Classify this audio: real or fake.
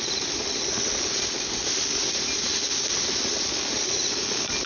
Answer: real